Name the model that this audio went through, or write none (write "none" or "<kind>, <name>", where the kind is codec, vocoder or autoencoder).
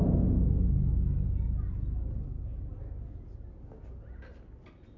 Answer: none